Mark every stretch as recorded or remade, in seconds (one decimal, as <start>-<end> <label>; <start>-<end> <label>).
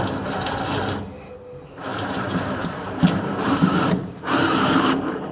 0.0-1.9 recorded; 1.9-5.3 remade